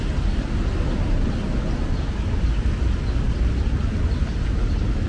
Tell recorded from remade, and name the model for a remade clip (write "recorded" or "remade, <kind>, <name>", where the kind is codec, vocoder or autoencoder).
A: recorded